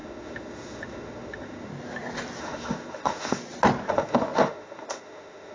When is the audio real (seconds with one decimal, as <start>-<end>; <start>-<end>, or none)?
1.7-2.4; 3.4-3.9